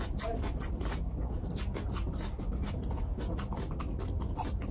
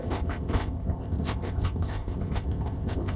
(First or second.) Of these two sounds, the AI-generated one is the second